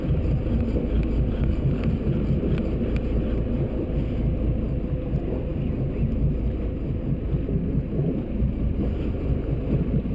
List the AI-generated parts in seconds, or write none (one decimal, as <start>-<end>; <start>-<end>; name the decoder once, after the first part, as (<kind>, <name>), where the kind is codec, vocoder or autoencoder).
1.4-1.9 (codec, SNAC)